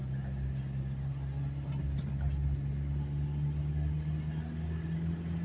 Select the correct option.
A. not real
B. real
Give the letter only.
B